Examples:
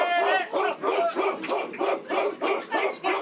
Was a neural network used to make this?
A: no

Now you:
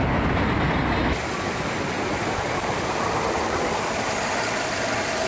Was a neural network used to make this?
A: no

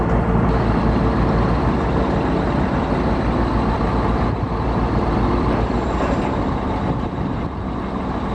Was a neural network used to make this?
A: yes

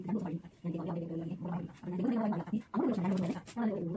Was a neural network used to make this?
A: no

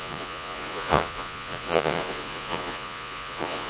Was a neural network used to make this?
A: yes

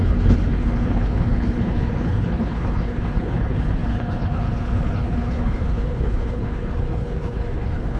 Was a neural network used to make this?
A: yes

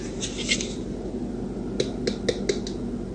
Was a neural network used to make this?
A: no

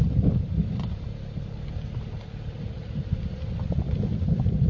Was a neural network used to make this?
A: no